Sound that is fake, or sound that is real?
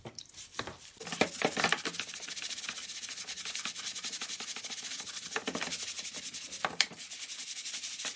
real